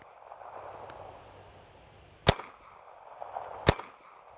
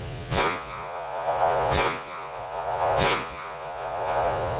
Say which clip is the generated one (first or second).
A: second